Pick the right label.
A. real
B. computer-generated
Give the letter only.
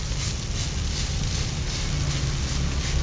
A